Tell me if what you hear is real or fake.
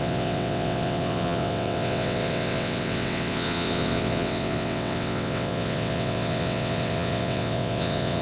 fake